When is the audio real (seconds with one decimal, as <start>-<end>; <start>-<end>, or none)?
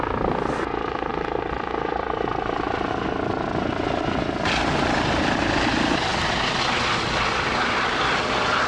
0.0-1.1; 2.9-6.1; 6.6-7.5; 8.2-8.7